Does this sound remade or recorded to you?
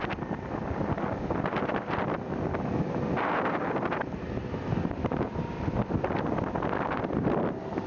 recorded